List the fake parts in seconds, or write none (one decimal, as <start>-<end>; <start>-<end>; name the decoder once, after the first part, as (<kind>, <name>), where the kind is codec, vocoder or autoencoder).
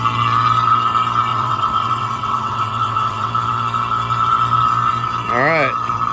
1.3-3.3 (vocoder, WaveNeXt)